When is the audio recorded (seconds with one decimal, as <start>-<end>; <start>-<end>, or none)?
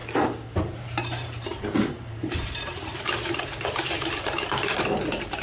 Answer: 0.0-0.6; 2.9-3.8